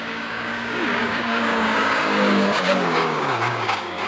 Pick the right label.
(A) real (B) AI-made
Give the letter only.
B